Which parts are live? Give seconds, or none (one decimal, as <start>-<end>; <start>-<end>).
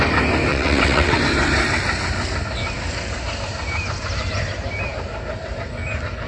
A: 0.0-0.5; 1.2-6.3